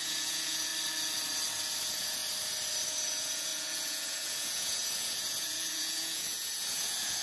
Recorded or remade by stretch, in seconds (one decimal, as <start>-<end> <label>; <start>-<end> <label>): 0.0-0.7 remade; 0.7-1.8 recorded; 1.8-2.2 remade; 2.2-2.9 recorded; 2.9-7.2 remade